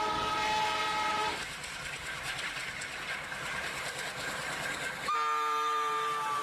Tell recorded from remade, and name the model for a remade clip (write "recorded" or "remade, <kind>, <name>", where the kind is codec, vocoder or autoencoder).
remade, vocoder, BigVGAN v2